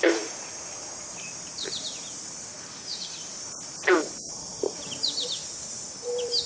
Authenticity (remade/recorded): remade